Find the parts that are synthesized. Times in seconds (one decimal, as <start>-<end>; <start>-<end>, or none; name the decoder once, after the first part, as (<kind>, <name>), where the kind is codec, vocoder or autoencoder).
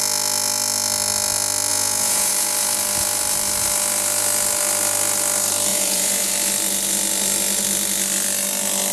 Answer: 1.7-2.3 (vocoder, Vocos); 5.7-6.3